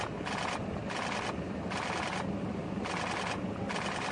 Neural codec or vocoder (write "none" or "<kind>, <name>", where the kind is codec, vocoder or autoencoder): none